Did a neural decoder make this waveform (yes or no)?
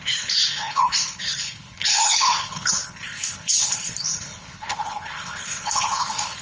yes